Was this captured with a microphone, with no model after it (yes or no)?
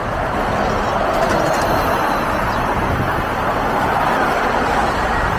yes